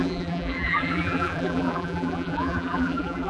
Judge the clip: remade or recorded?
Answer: remade